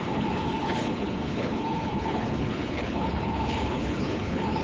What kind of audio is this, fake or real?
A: fake